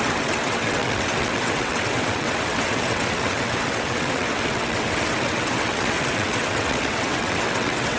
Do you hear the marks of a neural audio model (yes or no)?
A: yes